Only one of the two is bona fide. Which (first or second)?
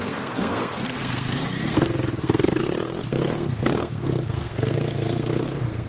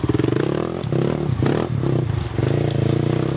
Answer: second